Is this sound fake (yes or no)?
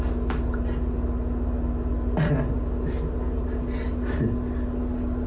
no